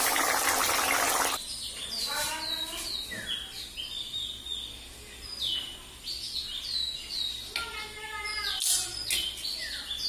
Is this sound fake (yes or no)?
no